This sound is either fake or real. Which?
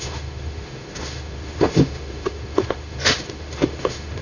fake